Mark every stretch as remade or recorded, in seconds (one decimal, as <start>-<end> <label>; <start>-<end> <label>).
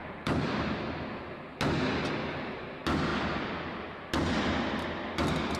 0.0-0.9 remade; 0.9-5.6 recorded